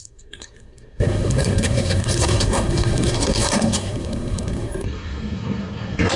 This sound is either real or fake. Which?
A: fake